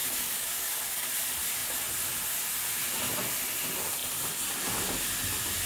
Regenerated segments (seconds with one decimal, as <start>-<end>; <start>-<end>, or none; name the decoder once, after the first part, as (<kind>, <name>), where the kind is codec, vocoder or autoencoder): 0.0-1.1 (codec, DAC)